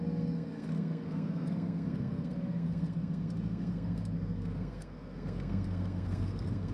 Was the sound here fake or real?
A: fake